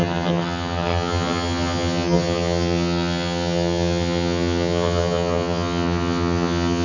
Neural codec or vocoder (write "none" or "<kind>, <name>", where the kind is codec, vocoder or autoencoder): vocoder, HiFi-GAN